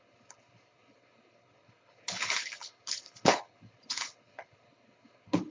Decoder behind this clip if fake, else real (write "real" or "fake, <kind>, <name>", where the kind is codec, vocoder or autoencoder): fake, codec, HILCodec